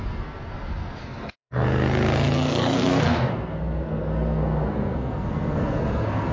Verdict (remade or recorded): remade